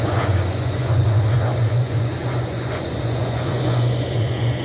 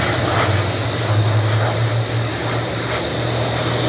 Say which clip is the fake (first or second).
first